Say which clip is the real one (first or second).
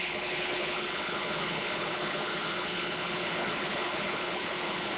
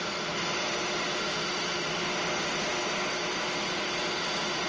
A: second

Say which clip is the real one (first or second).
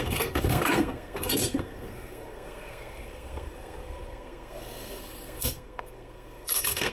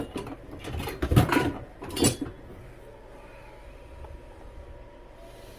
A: second